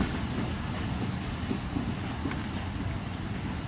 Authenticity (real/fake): real